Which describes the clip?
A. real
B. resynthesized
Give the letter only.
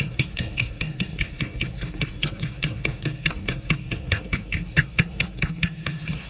B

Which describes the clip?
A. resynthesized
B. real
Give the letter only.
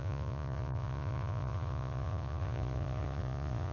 A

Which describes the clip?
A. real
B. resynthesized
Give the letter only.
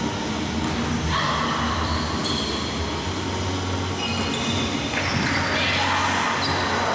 A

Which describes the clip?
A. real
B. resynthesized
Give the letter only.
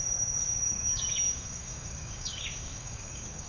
B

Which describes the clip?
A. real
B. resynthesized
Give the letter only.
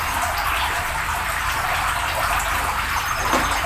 A